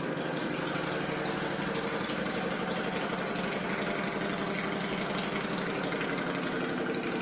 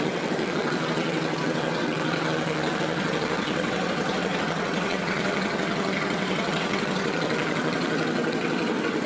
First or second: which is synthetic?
second